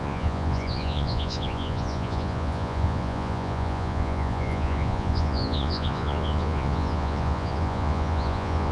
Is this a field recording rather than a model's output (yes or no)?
no